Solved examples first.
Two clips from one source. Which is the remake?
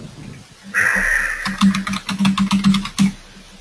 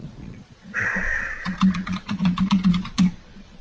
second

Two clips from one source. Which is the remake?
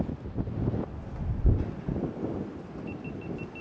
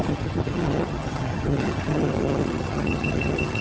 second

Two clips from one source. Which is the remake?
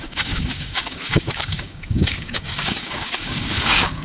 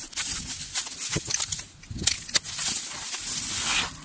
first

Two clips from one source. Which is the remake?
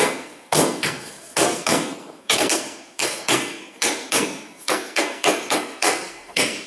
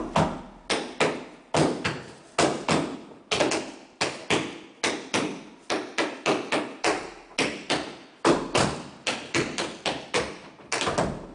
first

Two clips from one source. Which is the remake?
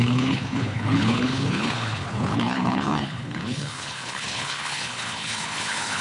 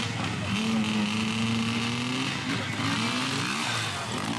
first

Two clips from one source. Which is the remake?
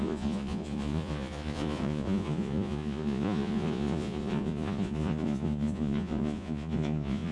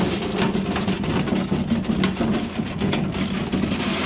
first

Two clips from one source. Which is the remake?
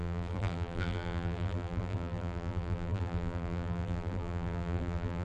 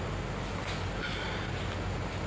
first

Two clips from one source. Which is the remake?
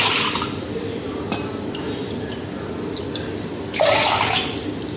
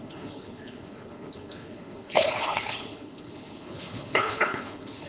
second